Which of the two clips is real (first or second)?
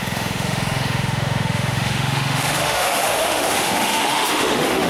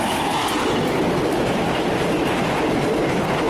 second